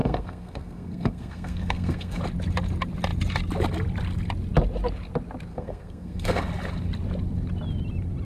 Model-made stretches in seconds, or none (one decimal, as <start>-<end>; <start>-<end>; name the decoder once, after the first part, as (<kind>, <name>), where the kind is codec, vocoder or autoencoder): 0.0-2.2 (codec, SNAC); 5.5-6.4